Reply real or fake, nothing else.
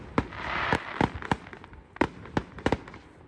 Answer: real